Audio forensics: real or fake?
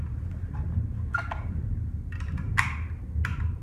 real